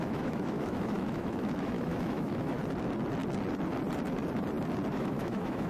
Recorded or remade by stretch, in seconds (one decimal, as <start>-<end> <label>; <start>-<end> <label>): 0.0-2.6 remade; 2.6-4.9 recorded; 4.9-5.7 remade